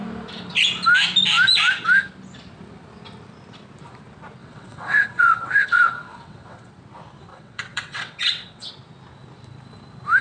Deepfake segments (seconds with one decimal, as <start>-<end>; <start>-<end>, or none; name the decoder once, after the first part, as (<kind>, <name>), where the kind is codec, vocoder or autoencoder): 4.4-6.7 (vocoder, WaveNeXt); 7.3-8.7